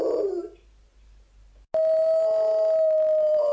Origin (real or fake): real